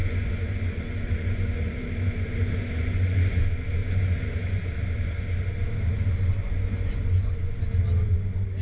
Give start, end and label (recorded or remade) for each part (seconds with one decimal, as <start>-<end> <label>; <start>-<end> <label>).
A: 0.0-3.4 remade; 3.4-3.8 recorded; 3.8-4.7 remade; 4.7-6.4 recorded; 6.4-7.3 remade; 7.3-8.6 recorded